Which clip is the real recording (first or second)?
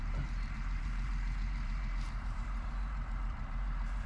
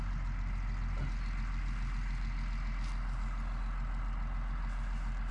second